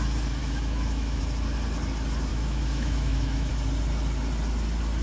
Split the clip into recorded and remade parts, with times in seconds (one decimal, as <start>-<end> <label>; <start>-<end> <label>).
0.0-0.4 recorded; 0.4-1.2 remade; 1.2-2.3 recorded; 2.3-3.5 remade; 3.5-5.0 recorded